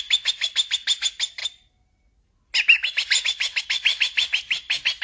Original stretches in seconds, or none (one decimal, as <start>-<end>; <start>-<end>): 0.0-5.0